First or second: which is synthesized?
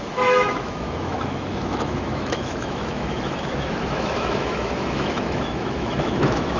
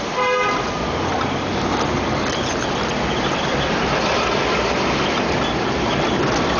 first